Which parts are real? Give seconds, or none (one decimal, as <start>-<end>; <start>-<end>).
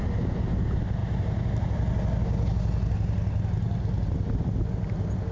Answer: 0.0-5.3